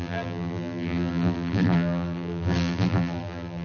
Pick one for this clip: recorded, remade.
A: remade